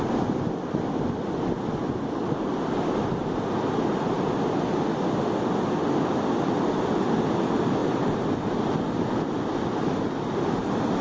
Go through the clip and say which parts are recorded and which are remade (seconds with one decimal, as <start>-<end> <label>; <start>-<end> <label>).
0.0-11.0 recorded